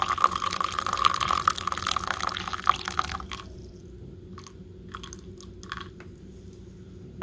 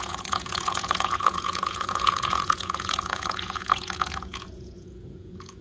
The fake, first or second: second